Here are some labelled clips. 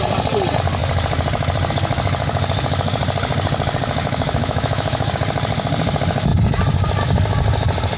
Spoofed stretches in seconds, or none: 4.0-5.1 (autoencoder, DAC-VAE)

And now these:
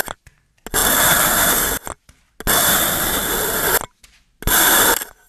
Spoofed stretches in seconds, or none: none

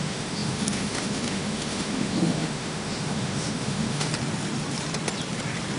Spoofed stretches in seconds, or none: 0.0-4.1 (autoencoder, DAC-VAE)

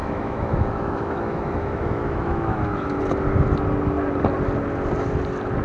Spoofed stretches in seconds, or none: 0.0-3.0 (autoencoder, DAC-VAE)